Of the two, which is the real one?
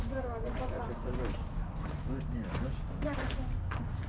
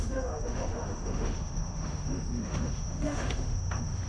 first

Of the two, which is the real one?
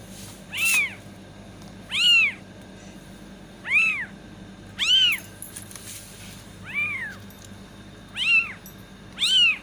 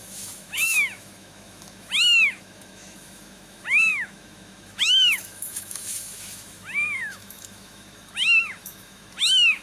first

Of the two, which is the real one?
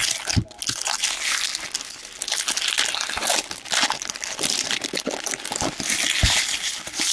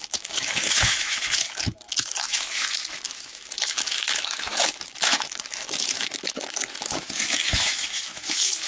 first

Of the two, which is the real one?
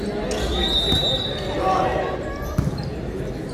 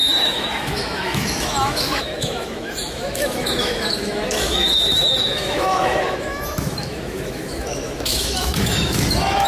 first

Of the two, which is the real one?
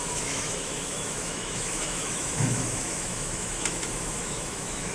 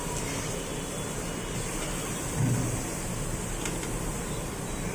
second